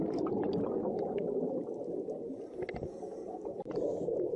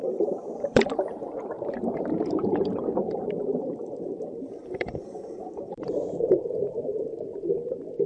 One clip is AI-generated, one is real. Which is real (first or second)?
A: first